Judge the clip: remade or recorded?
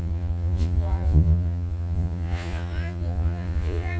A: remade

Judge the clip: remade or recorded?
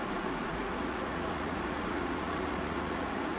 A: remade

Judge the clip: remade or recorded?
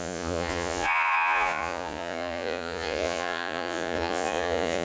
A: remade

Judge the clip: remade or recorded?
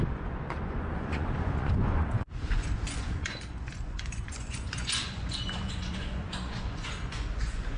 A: remade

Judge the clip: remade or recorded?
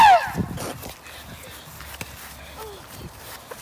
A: recorded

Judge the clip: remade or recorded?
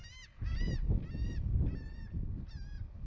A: recorded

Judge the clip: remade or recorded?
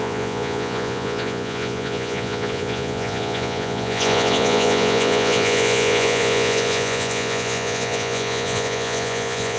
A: remade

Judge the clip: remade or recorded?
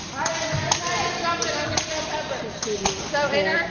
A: recorded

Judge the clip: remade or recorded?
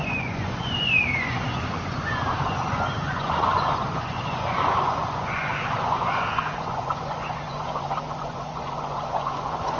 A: remade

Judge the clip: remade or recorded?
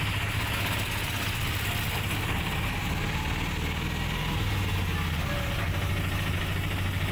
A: recorded